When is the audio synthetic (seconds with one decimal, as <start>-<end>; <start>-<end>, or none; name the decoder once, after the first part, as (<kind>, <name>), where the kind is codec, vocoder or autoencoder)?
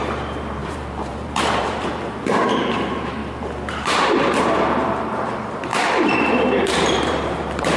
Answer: 0.0-3.2 (vocoder, BigVGAN v2); 3.7-5.7; 6.3-7.8